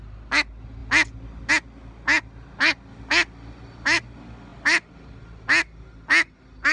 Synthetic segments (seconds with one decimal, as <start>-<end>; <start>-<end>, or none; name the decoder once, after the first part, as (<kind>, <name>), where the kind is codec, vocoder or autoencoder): none